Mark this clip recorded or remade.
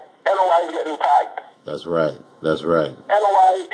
remade